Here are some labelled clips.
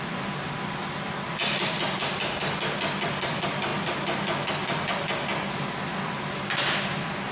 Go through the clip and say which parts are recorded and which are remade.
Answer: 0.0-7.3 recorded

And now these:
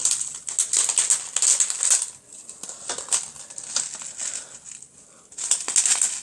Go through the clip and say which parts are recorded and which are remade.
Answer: 0.0-6.2 recorded

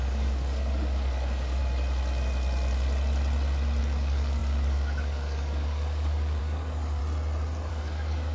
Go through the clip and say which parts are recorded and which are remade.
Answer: 0.0-1.6 remade; 1.6-3.8 recorded; 3.8-7.0 remade; 7.0-7.7 recorded; 7.7-8.3 remade

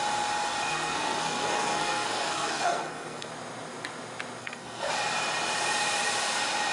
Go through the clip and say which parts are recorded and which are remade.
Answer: 0.0-0.7 recorded; 0.7-3.3 remade; 3.3-4.4 recorded; 4.4-4.9 remade; 4.9-6.7 recorded